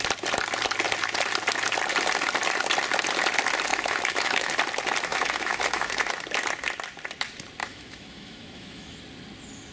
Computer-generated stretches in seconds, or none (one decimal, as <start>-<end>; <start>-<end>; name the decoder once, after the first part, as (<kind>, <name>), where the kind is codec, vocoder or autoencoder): 3.7-4.5 (autoencoder, DAC-VAE); 5.1-6.1; 7.6-9.0